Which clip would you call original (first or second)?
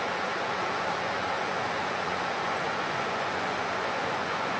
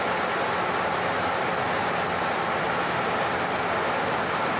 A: second